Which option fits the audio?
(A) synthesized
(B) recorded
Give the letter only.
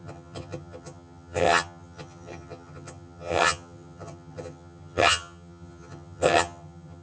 A